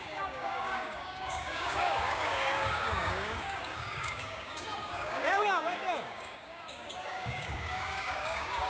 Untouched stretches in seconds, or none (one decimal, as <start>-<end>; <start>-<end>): none